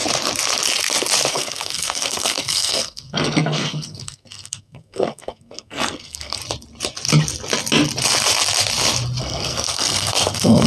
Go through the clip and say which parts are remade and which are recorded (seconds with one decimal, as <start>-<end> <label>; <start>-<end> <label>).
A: 0.0-1.3 recorded; 1.3-6.4 remade; 6.4-9.2 recorded; 9.2-10.7 remade